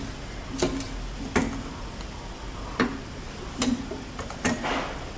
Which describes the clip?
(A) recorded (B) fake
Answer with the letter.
A